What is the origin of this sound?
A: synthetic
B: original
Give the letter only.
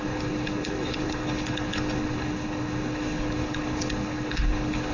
A